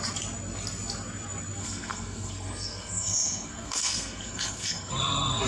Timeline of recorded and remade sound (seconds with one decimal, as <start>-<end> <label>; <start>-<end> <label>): 0.0-1.6 recorded; 1.6-4.9 remade; 4.9-5.5 recorded